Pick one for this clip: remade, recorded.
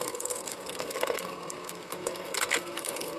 remade